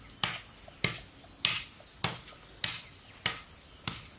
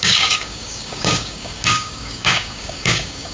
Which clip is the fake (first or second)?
second